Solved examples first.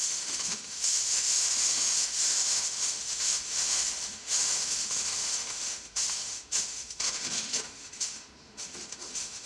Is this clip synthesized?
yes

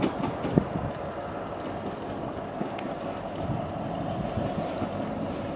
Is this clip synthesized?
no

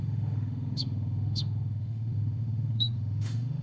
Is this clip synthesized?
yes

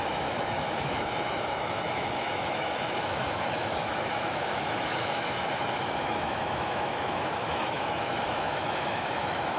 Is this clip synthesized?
yes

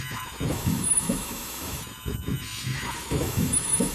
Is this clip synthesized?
yes